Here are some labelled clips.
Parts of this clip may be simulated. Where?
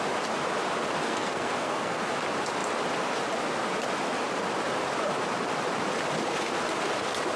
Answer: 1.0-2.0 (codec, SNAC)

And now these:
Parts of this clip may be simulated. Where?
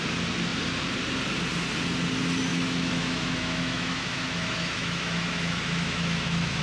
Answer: 2.5-6.6 (autoencoder, DAC-VAE)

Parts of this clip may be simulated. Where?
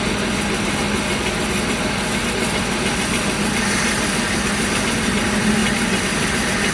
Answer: none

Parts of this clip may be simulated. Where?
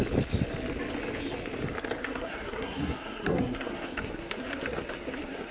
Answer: 2.0-5.5 (codec, SNAC)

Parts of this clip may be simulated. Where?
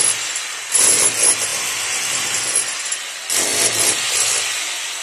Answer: 3.5-4.6 (vocoder, BigVGAN v2)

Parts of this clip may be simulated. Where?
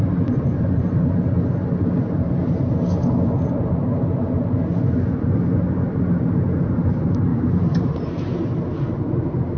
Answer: 7.3-9.0 (vocoder, BigVGAN v2)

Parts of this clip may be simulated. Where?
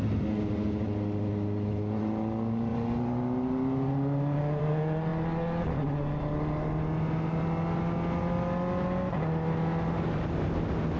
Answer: none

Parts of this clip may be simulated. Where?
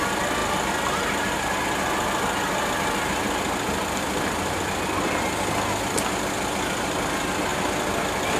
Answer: none